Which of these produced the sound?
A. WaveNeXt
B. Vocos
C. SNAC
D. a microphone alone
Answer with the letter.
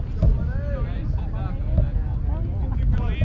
D